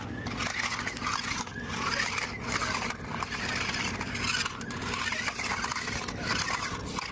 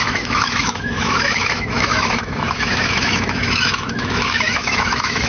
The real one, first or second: first